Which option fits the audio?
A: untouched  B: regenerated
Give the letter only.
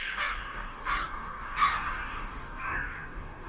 B